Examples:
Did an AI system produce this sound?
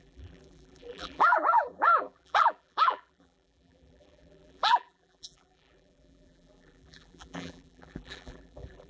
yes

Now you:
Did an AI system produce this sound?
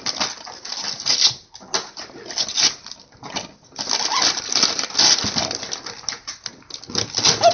no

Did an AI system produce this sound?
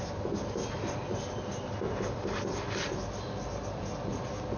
no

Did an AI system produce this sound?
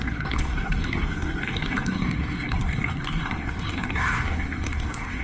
yes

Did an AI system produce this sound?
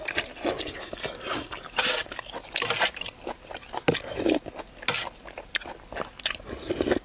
no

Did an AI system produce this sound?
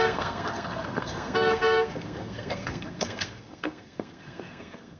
yes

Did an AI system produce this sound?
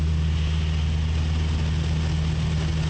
no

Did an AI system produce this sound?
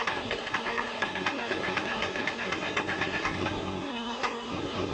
yes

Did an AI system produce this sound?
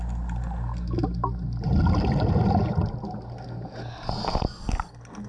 no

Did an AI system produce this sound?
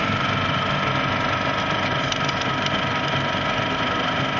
no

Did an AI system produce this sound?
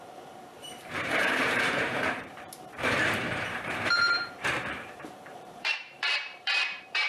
yes